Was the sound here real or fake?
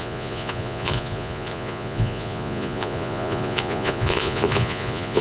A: fake